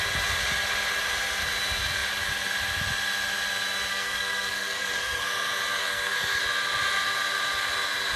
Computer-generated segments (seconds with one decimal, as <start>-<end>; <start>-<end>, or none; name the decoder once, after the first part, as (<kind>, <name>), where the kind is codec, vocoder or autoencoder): 3.9-5.2 (codec, SNAC); 5.8-6.4